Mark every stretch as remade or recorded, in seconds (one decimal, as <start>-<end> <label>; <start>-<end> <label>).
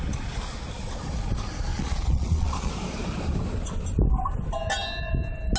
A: 0.0-1.7 recorded; 1.7-2.7 remade; 2.7-5.6 recorded